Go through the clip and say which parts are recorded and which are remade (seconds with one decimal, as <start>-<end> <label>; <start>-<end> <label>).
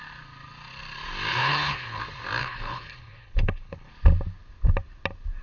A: 0.0-1.3 recorded; 1.3-2.0 remade; 2.0-2.4 recorded; 2.4-3.9 remade; 3.9-5.4 recorded